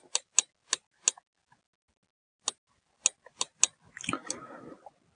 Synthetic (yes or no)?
no